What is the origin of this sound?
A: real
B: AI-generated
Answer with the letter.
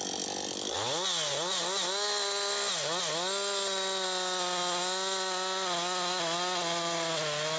A